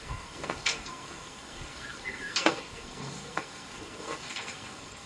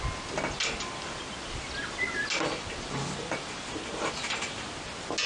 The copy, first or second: first